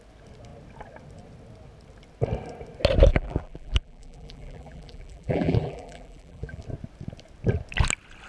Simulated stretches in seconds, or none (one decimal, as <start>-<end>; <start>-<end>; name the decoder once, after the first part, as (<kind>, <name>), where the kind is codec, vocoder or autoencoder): 3.1-6.6 (vocoder, BigVGAN v2)